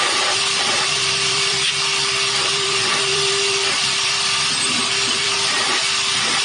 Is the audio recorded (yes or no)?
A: no